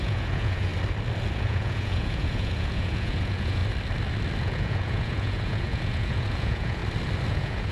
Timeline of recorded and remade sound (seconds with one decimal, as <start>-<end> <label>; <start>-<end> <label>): 0.0-0.7 remade; 0.7-1.3 recorded; 1.3-3.6 remade; 3.6-4.4 recorded; 4.4-6.8 remade; 6.8-7.3 recorded; 7.3-7.7 remade